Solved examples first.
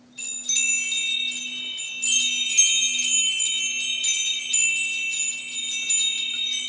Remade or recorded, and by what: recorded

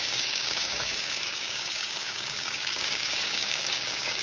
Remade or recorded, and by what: remade, codec, DAC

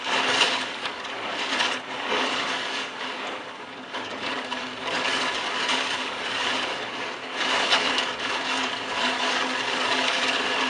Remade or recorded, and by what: remade, codec, DAC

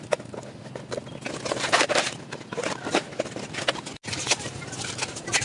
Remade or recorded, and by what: recorded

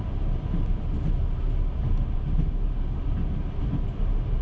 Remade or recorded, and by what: recorded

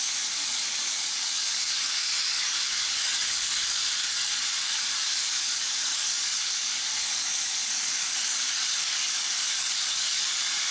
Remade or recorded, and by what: remade, codec, DAC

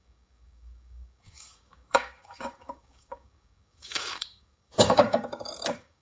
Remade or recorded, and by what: remade, codec, DAC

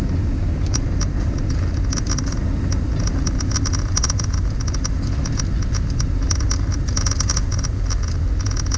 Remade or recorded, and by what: recorded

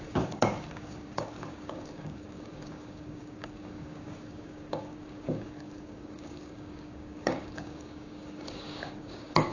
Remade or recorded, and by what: remade, codec, DAC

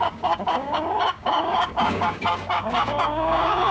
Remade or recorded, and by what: remade, codec, DAC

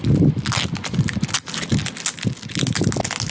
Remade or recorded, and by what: recorded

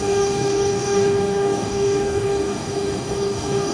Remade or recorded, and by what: remade, codec, DAC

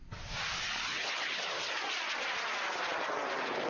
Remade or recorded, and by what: recorded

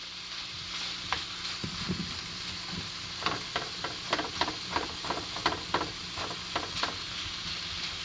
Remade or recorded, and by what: recorded